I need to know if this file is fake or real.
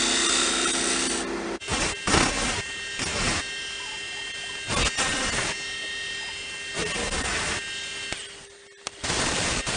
real